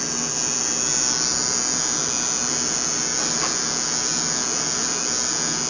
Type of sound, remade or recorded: recorded